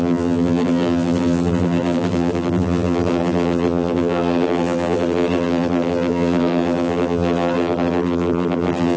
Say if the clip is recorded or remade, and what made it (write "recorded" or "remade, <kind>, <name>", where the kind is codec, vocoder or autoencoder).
remade, vocoder, BigVGAN v2